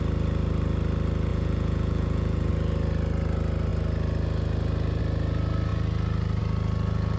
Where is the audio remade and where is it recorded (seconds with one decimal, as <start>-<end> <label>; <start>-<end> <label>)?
0.0-1.3 recorded; 1.3-2.5 remade; 2.5-7.2 recorded